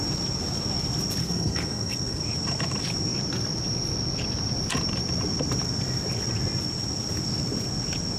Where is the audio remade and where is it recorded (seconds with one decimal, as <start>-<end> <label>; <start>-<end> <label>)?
0.0-1.2 recorded; 1.2-2.2 remade; 2.2-8.2 recorded